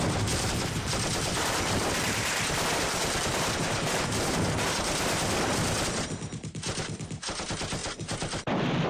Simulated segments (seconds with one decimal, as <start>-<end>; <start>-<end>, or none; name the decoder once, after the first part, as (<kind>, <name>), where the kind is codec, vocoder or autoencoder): 0.0-8.9 (vocoder, BigVGAN v2)